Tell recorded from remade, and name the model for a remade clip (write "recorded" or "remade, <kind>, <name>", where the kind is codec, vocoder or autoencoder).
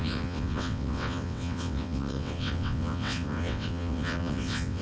remade, vocoder, WaveNeXt